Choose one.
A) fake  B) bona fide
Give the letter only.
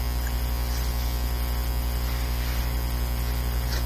B